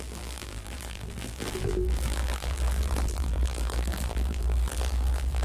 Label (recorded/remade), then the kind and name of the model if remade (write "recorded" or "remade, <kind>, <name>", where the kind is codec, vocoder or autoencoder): remade, vocoder, BigVGAN v2